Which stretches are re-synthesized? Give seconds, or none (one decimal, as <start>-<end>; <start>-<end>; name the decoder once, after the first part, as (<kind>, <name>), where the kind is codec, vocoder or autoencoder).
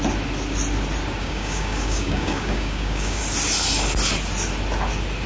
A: 1.2-3.2 (codec, DAC)